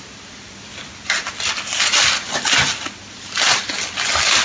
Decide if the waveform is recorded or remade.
recorded